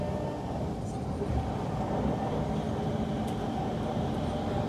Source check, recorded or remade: recorded